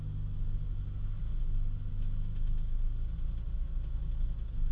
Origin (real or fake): real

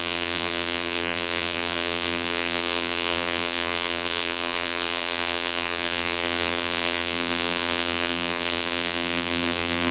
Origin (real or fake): fake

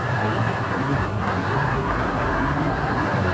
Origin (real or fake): fake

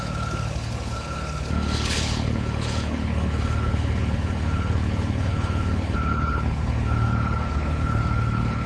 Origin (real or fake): fake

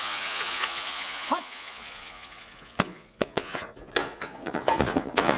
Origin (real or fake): fake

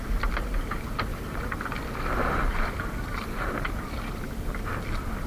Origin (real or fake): real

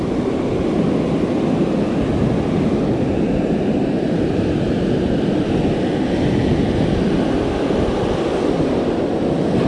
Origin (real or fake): real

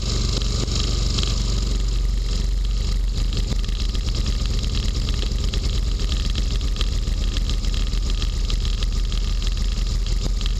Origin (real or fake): real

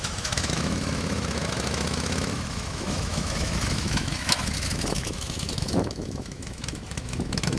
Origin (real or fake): fake